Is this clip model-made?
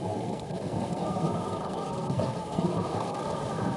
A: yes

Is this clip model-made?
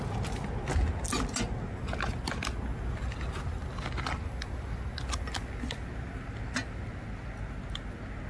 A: no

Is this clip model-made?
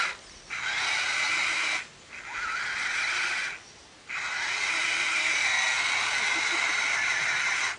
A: no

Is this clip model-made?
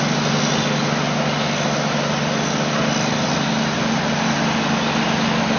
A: no